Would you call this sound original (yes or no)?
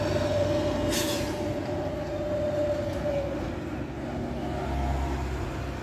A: yes